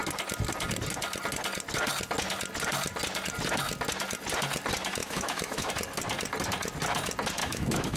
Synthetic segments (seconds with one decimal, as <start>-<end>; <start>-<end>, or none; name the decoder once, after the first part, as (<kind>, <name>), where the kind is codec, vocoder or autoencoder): 5.0-5.7 (autoencoder, DAC-VAE); 7.4-8.0